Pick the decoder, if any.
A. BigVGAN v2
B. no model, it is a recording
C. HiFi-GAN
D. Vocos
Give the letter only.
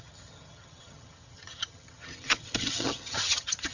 C